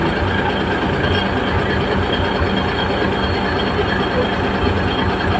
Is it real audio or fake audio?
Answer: real